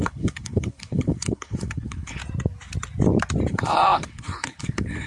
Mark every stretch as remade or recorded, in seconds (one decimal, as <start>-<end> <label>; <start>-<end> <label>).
0.0-2.2 remade; 2.2-3.5 recorded; 3.5-5.1 remade